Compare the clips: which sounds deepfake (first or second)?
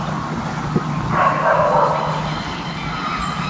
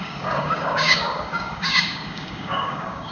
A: second